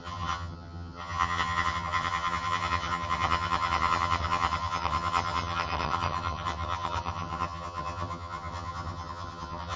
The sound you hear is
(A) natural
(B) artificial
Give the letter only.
B